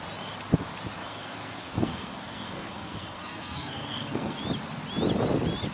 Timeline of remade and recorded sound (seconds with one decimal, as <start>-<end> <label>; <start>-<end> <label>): 0.0-1.0 recorded; 1.0-4.4 remade; 4.4-5.7 recorded